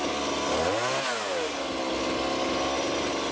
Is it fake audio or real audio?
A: real